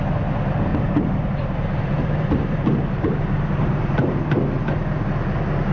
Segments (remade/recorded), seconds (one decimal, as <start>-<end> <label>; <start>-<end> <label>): 0.0-0.7 recorded; 0.7-4.1 remade; 4.1-5.7 recorded